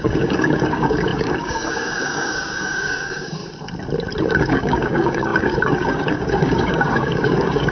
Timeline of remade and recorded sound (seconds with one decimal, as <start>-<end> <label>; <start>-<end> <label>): 0.0-3.4 remade; 3.4-4.2 recorded; 4.2-7.7 remade